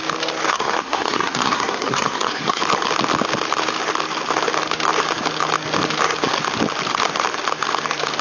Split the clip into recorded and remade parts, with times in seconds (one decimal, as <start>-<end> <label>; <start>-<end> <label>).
0.0-0.5 recorded; 0.5-2.6 remade; 2.6-8.2 recorded